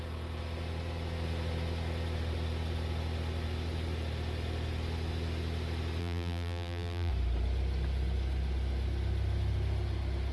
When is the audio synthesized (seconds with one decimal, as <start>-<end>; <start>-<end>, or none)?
6.0-7.1